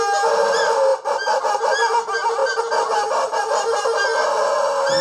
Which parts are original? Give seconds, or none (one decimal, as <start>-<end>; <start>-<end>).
0.0-5.0

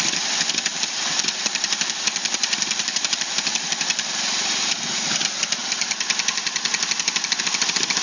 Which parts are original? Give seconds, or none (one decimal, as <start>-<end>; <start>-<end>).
0.0-0.7; 5.1-8.0

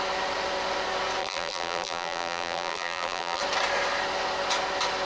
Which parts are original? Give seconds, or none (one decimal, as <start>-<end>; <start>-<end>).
0.0-1.2; 3.4-5.1

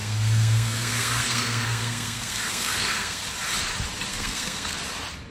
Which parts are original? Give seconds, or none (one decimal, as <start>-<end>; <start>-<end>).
3.2-4.1; 4.8-5.3

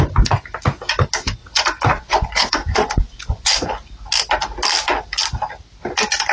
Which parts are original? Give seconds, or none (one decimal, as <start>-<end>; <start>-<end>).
0.0-1.4; 3.5-6.3

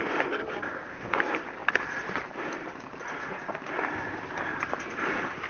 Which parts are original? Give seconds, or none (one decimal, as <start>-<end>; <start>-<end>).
0.0-0.4; 1.2-5.5

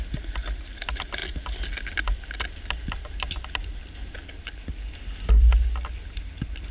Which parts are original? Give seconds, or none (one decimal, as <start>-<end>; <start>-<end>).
0.0-6.7